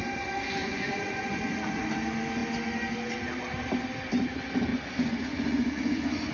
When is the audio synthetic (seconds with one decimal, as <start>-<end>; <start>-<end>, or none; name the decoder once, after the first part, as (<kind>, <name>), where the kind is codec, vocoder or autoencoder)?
0.6-1.8 (vocoder, Vocos); 4.7-6.3